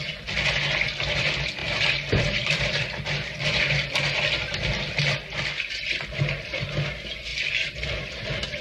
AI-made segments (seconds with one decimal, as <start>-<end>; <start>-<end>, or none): 1.6-3.6